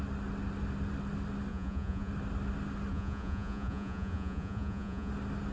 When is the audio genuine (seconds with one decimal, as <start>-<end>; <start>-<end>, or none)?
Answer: 0.0-1.5; 2.1-2.9; 5.1-5.5